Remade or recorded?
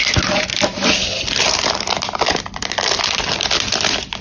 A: recorded